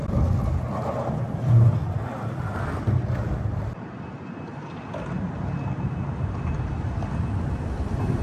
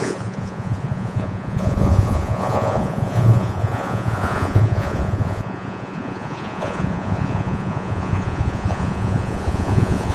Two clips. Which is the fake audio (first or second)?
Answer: second